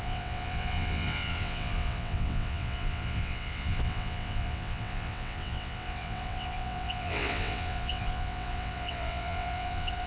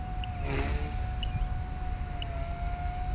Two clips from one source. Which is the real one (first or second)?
second